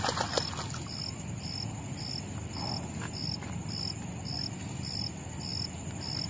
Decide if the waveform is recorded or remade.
recorded